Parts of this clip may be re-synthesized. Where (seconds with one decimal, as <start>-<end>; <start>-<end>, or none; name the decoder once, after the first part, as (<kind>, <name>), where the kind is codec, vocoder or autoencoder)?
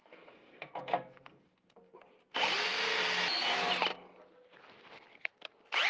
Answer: 0.0-2.0 (codec, SNAC)